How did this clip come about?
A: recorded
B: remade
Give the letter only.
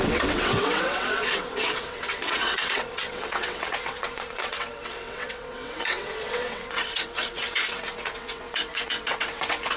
B